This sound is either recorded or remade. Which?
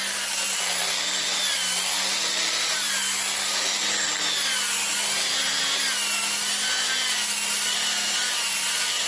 recorded